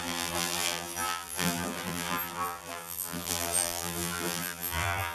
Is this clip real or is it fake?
fake